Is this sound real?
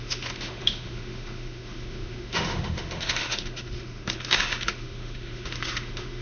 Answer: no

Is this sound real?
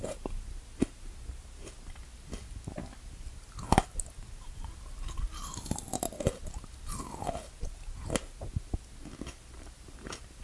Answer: yes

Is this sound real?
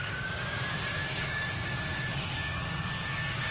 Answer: no